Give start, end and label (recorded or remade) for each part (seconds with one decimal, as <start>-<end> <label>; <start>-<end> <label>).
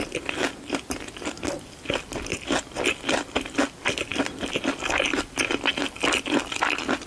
0.0-7.1 recorded